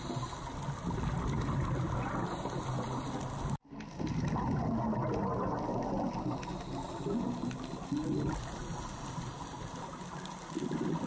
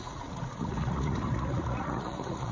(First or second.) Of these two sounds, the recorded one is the first